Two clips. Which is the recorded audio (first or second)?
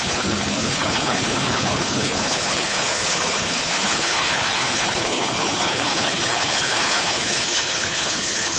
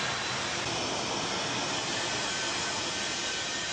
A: second